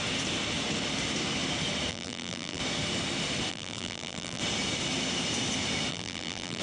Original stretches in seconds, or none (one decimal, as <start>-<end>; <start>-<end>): 0.0-1.9; 2.6-3.5; 4.4-5.9